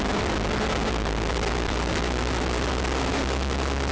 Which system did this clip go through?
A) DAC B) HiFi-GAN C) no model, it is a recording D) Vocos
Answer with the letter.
C